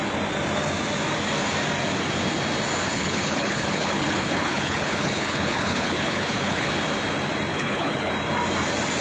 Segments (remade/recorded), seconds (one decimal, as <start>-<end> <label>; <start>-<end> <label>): 0.0-2.9 recorded; 2.9-6.7 remade; 6.7-7.5 recorded; 7.5-8.1 remade; 8.1-9.0 recorded